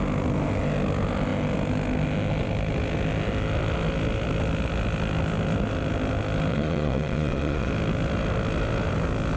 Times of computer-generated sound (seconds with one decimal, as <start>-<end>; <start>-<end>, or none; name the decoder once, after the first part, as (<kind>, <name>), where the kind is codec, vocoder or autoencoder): 6.5-7.7 (vocoder, Vocos)